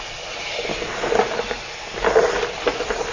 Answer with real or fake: real